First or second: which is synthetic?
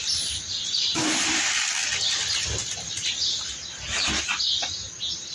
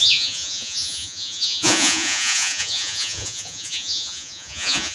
second